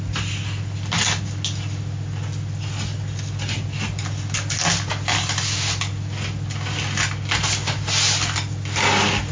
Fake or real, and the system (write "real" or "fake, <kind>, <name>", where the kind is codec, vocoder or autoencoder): real